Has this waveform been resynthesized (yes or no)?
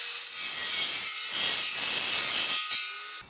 no